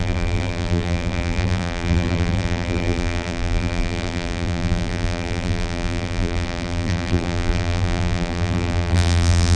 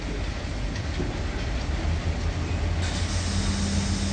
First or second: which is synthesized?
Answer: first